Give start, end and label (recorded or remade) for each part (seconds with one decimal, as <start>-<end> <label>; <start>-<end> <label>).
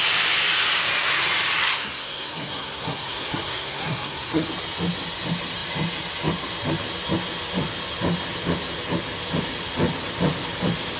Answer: 0.0-1.6 recorded; 1.6-4.5 remade; 4.5-11.0 recorded